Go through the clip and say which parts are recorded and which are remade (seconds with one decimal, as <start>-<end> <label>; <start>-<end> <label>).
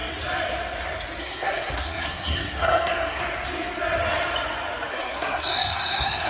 0.0-1.2 recorded; 1.2-3.2 remade; 3.2-4.9 recorded; 4.9-6.3 remade